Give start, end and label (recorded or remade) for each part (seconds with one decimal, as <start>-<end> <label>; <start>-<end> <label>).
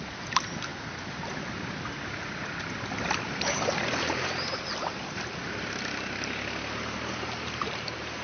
0.0-8.2 recorded